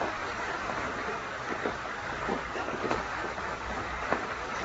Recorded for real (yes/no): no